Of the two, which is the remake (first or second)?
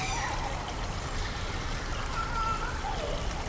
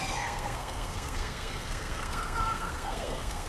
second